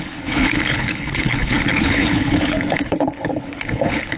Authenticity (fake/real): fake